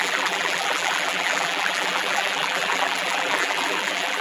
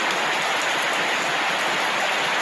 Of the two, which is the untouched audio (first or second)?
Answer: second